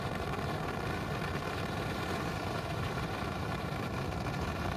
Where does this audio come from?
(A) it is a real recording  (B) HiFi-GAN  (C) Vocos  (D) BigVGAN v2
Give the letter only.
D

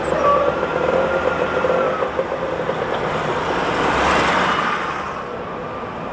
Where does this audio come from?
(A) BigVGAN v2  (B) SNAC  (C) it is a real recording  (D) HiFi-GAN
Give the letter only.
C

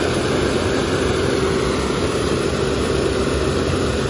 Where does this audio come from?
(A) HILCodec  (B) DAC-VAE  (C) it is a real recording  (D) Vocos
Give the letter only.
C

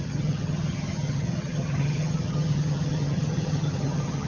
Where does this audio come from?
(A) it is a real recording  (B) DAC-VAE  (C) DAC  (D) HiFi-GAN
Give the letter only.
D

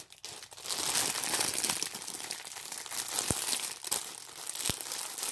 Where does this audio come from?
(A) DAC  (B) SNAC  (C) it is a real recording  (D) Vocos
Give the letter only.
C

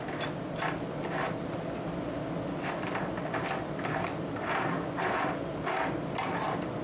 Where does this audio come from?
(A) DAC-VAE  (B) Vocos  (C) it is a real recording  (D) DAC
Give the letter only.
C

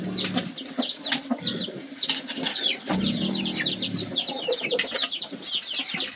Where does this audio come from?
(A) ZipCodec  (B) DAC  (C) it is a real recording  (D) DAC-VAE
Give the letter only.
C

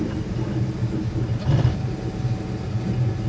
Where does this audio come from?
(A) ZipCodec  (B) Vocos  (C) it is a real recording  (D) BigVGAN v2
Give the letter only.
C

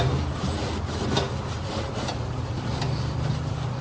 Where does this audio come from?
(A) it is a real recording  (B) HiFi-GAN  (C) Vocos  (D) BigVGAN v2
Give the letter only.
A